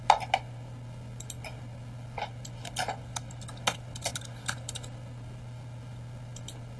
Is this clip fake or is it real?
real